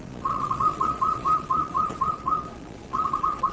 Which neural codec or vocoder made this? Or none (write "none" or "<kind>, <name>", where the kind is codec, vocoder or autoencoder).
vocoder, Vocos